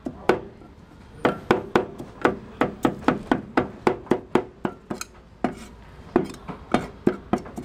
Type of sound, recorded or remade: recorded